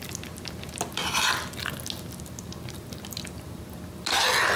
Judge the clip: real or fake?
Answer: real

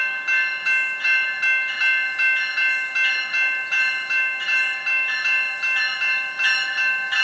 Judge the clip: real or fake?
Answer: real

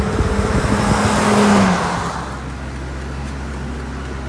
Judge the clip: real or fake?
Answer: real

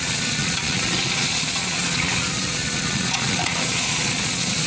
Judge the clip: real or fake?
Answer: fake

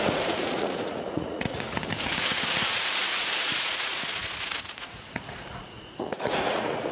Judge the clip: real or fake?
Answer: fake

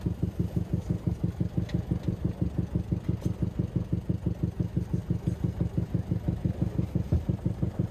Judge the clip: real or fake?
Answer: real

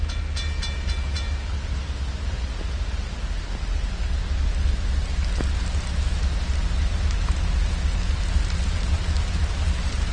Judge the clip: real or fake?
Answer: real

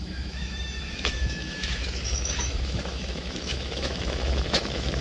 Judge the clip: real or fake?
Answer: fake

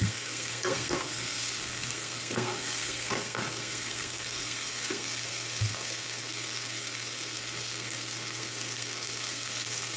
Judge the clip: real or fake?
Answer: fake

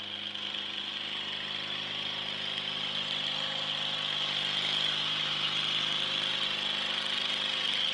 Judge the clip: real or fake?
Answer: real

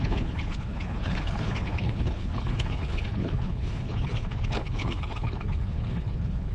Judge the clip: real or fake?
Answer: fake